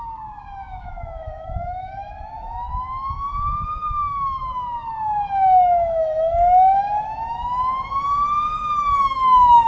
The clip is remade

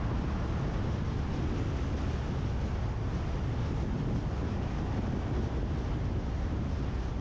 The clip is recorded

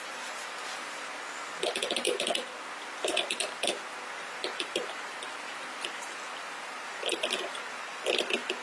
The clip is recorded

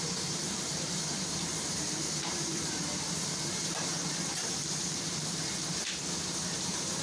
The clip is remade